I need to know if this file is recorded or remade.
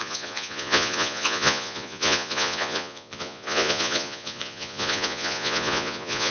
remade